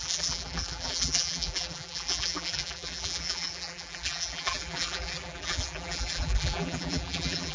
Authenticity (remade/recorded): remade